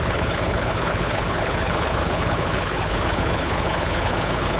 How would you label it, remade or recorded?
remade